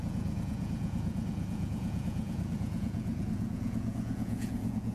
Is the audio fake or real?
fake